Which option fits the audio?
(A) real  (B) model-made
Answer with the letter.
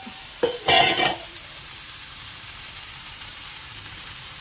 B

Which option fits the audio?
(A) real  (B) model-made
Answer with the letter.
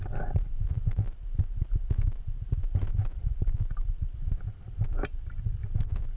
A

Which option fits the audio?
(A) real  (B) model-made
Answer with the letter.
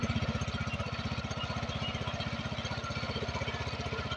A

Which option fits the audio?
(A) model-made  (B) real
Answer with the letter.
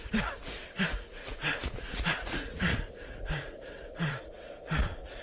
A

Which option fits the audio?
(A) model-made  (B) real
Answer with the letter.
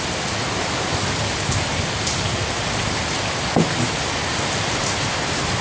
B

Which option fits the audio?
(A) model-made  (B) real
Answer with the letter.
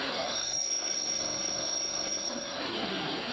A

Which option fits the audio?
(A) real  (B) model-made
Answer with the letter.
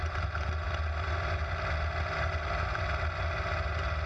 A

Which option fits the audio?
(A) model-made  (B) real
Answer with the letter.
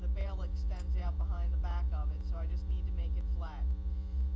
A